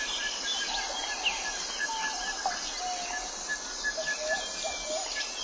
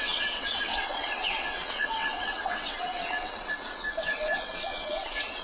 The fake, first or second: second